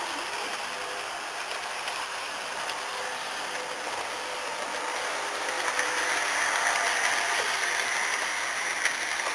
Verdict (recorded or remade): recorded